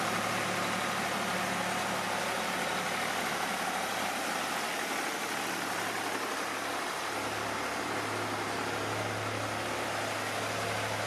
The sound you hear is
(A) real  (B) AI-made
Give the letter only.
A